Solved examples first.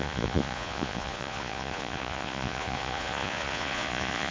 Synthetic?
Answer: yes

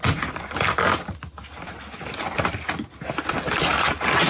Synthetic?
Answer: no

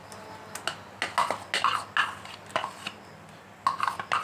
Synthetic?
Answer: no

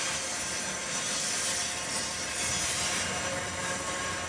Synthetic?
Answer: no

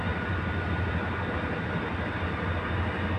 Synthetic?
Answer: no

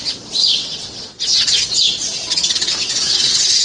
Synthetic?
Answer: yes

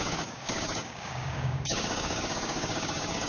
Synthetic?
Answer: yes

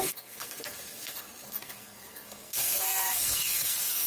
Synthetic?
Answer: yes